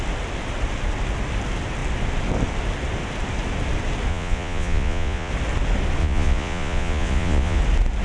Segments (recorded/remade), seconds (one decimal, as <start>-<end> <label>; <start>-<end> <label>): 0.0-4.1 recorded; 4.1-5.3 remade; 5.3-6.0 recorded; 6.0-7.6 remade; 7.6-8.0 recorded